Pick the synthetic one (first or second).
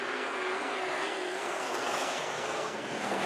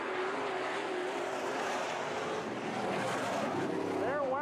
first